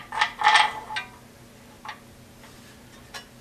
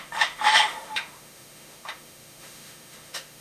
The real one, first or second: first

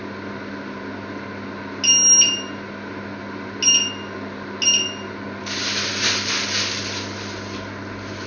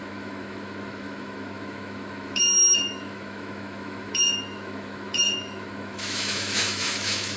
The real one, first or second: first